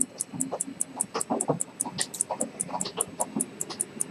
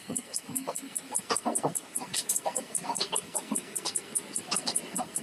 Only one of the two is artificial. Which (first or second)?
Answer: second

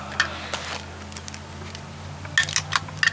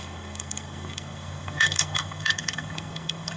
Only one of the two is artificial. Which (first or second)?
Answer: second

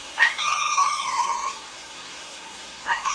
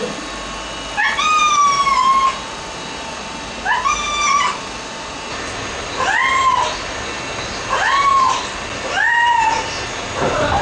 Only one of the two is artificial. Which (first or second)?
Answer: first